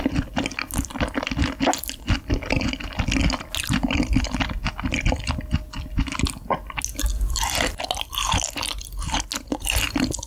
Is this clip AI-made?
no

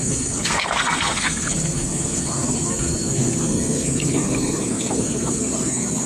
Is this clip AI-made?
yes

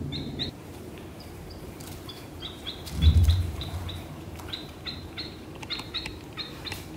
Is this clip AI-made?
yes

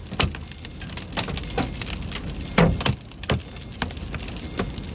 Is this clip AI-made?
no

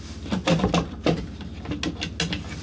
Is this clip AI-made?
no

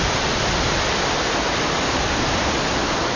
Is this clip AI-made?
no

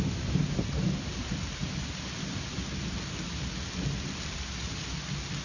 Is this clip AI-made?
no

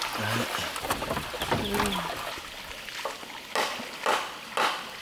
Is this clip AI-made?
no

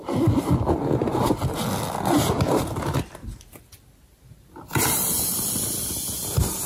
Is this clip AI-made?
no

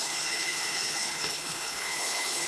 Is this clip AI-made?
yes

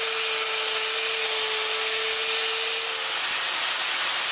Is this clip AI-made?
no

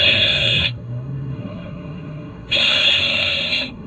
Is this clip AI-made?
yes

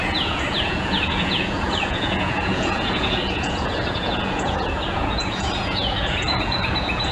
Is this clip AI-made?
yes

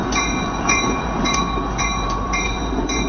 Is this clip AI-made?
yes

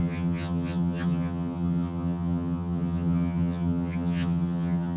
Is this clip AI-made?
yes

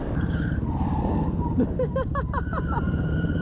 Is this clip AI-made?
no